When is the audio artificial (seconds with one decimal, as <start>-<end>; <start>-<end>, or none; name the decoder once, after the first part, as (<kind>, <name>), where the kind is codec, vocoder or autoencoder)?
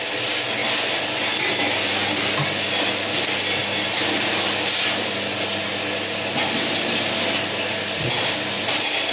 none